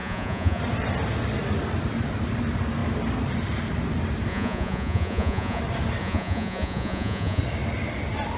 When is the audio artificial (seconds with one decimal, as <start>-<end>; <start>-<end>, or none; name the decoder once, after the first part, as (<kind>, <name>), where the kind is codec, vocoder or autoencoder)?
0.0-0.6 (vocoder, Vocos); 4.3-5.6; 6.0-7.4